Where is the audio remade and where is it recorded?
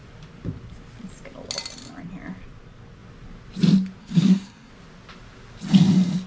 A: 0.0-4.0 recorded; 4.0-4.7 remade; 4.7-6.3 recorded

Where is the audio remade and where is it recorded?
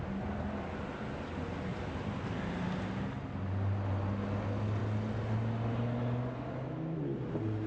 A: 0.0-1.7 recorded; 1.7-2.4 remade; 2.4-7.7 recorded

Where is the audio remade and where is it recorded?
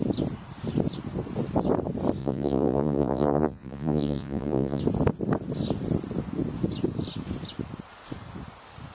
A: 0.0-2.2 recorded; 2.2-4.8 remade; 4.8-8.9 recorded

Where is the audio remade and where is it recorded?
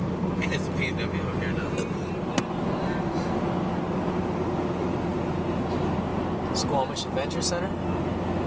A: 0.0-8.5 recorded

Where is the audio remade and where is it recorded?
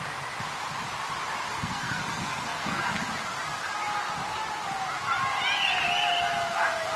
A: 0.0-1.5 recorded; 1.5-2.8 remade; 2.8-7.0 recorded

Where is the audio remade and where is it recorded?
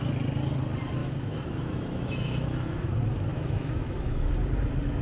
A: 0.0-1.0 recorded; 1.0-2.9 remade; 2.9-3.3 recorded; 3.3-4.3 remade; 4.3-5.0 recorded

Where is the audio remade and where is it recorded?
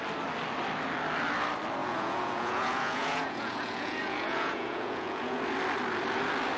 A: 0.0-1.8 recorded; 1.8-5.4 remade; 5.4-6.6 recorded